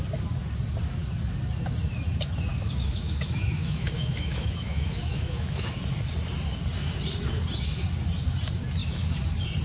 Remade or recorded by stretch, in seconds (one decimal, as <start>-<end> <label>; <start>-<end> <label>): 0.0-2.5 recorded; 2.5-5.8 remade; 5.8-9.6 recorded